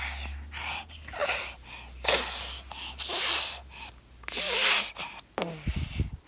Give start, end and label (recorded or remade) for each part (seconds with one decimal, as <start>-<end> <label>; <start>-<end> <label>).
0.0-6.3 recorded